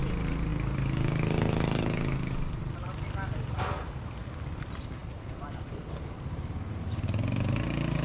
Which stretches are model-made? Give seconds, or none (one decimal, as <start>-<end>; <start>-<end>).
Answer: none